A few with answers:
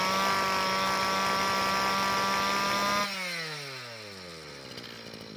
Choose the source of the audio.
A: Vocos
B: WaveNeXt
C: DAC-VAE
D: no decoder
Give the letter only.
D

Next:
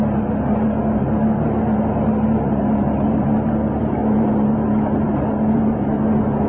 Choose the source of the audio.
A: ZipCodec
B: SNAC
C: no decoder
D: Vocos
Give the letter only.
C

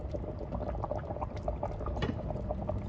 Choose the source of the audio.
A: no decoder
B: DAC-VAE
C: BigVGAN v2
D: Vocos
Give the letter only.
C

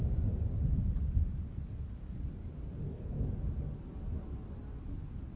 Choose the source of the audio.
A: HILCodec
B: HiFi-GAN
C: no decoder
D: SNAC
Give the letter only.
C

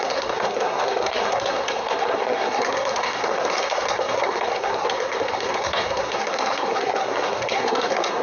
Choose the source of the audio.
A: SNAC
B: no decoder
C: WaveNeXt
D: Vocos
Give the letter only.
A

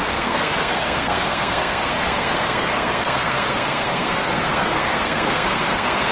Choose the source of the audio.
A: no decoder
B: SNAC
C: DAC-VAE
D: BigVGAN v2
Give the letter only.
B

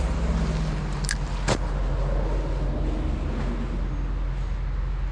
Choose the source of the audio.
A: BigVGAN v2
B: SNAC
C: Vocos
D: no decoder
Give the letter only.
D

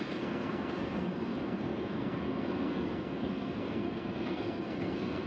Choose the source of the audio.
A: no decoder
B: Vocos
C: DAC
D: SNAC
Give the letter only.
D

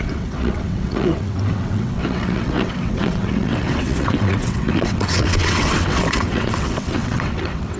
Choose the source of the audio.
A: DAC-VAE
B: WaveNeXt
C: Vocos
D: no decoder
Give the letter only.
B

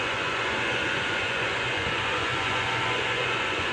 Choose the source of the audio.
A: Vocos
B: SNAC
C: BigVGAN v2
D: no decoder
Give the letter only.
A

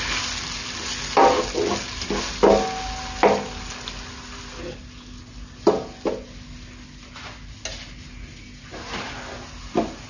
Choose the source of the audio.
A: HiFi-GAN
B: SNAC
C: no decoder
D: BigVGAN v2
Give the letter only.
C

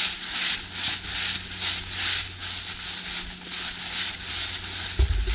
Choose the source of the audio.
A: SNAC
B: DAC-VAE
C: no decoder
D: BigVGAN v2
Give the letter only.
C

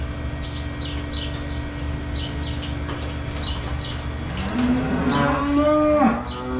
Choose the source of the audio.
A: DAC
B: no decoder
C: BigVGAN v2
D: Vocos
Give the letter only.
B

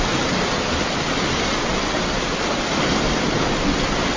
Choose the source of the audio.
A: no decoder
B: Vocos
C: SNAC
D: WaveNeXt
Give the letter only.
A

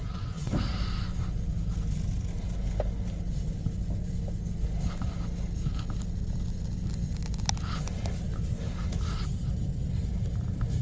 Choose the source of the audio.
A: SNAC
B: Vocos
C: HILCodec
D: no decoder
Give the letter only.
D